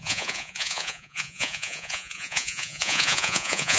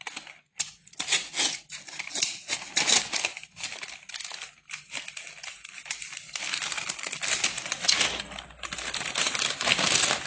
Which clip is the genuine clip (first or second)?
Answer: second